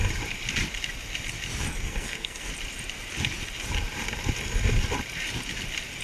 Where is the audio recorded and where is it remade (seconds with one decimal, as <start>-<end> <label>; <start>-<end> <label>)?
0.0-1.7 recorded; 1.7-2.5 remade; 2.5-6.0 recorded